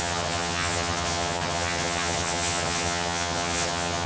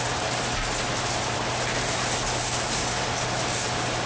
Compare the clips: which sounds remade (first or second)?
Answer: first